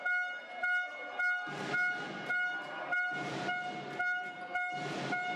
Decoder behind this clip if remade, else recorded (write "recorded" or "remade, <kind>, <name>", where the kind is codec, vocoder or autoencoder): recorded